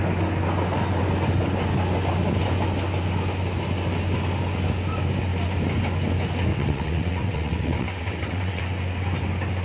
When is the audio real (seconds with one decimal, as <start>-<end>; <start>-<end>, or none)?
0.0-6.5; 8.6-9.6